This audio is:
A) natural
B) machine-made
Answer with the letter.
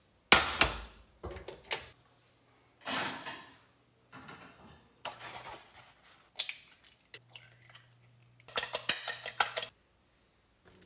A